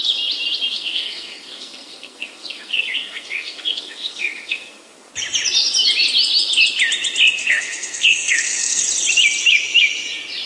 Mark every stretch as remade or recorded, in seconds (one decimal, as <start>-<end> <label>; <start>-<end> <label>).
0.0-0.7 recorded; 0.7-5.1 remade; 5.1-7.4 recorded; 7.4-8.8 remade; 8.8-10.5 recorded

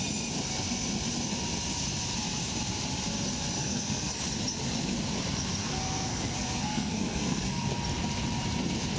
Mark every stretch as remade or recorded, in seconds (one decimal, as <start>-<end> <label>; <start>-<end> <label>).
0.0-3.6 recorded; 3.6-4.2 remade; 4.2-5.6 recorded; 5.6-7.7 remade; 7.7-9.0 recorded

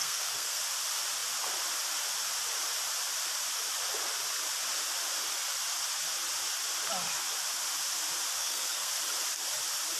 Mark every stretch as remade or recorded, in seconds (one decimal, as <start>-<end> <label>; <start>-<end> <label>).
0.0-0.6 remade; 0.6-8.4 recorded; 8.4-8.9 remade; 8.9-10.0 recorded

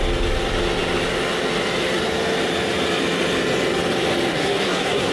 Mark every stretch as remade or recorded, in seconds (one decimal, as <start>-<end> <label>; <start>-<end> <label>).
0.0-4.3 recorded; 4.3-5.1 remade

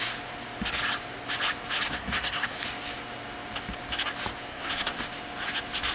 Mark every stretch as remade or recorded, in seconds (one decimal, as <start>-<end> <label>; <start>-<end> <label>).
0.0-1.9 recorded; 1.9-2.6 remade; 2.6-4.5 recorded; 4.5-5.0 remade; 5.0-5.9 recorded

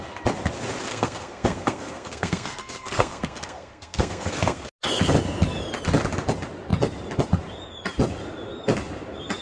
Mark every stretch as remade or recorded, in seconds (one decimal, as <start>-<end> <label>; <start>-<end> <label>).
0.0-0.9 recorded; 0.9-4.7 remade; 4.7-9.4 recorded

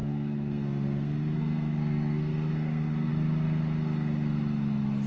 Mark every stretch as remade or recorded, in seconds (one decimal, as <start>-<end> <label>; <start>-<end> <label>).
0.0-3.1 remade; 3.1-5.1 recorded

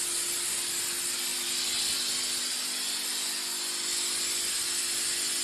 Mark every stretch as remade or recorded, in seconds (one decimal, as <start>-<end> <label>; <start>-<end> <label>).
0.0-5.4 recorded